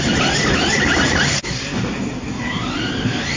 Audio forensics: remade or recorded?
recorded